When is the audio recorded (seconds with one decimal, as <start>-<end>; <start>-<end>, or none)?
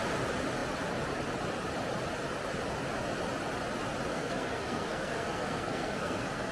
0.0-4.1